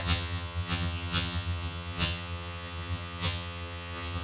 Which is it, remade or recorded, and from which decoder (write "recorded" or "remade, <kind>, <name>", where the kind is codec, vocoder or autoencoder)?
remade, vocoder, HiFi-GAN